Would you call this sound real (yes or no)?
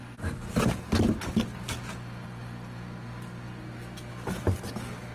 yes